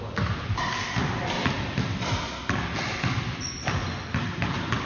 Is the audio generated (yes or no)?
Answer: no